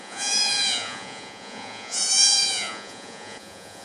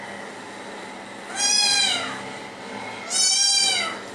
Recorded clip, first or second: second